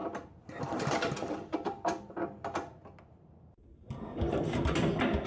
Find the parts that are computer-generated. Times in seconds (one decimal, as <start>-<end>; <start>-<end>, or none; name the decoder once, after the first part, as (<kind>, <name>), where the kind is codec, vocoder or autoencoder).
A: none